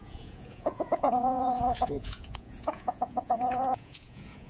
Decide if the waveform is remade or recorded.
remade